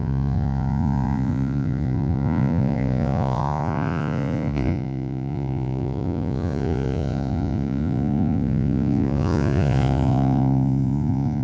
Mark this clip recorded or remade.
remade